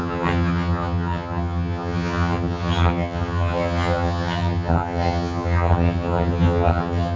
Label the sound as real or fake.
fake